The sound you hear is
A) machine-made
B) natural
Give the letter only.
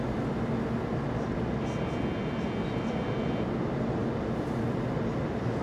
B